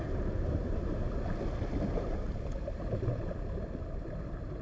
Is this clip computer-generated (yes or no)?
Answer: no